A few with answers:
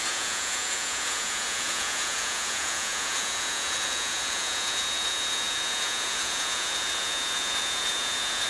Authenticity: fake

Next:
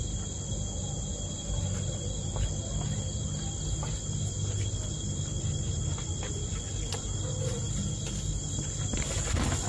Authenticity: real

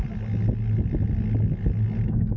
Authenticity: real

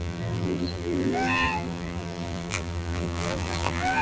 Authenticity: fake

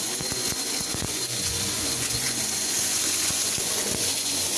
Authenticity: fake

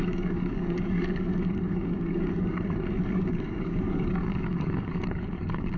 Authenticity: fake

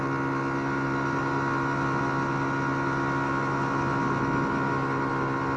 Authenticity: real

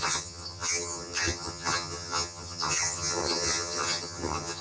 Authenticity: fake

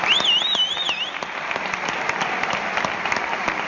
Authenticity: real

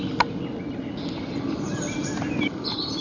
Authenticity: real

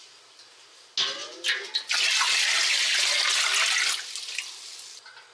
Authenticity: real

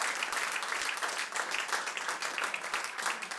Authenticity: real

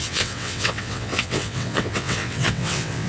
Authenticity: fake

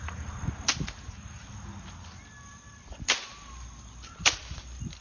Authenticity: real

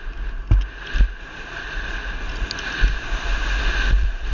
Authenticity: real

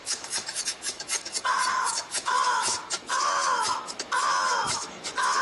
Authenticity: fake